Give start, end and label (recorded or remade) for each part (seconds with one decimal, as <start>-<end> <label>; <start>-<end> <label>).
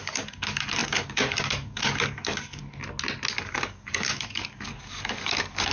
0.0-2.6 remade; 2.6-3.3 recorded; 3.3-5.7 remade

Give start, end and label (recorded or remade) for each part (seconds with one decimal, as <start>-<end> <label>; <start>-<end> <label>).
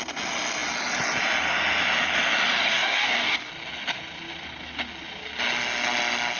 0.0-2.7 recorded; 2.7-3.5 remade; 3.5-6.4 recorded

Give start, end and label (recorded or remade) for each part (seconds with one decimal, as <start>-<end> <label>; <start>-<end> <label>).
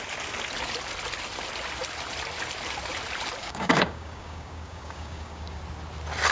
0.0-3.4 recorded; 3.4-5.6 remade; 5.6-6.3 recorded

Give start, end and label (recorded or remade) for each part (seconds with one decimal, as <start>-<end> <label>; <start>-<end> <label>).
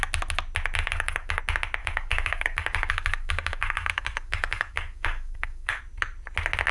0.0-0.8 recorded; 0.8-1.4 remade; 1.4-1.8 recorded; 1.8-5.8 remade; 5.8-6.7 recorded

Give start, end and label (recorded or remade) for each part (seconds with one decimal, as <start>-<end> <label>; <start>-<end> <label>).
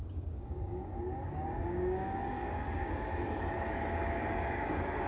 0.0-3.1 remade; 3.1-3.9 recorded; 3.9-5.1 remade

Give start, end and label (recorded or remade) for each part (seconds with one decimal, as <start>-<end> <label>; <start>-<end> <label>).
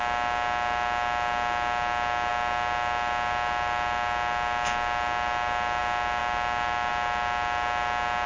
0.0-8.3 recorded